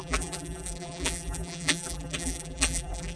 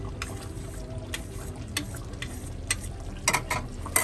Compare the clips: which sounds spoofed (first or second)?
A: first